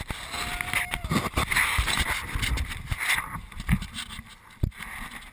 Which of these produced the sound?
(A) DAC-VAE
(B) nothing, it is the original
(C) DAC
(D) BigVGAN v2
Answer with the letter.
B